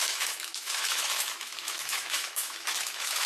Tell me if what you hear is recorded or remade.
remade